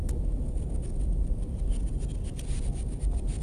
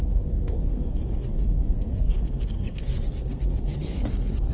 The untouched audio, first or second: first